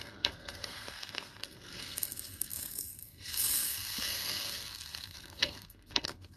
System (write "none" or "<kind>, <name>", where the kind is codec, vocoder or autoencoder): codec, SNAC